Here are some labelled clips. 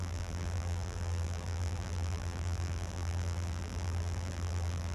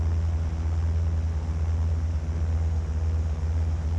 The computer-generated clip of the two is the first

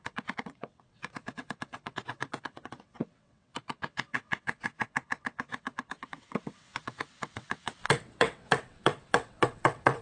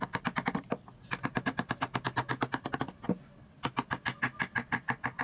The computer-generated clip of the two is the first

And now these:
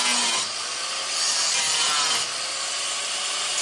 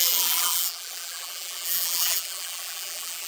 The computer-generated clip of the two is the second